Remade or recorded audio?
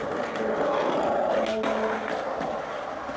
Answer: recorded